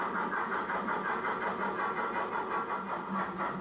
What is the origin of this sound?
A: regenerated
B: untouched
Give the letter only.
B